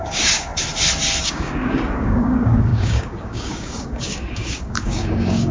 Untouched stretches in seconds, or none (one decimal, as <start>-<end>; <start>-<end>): 0.5-1.2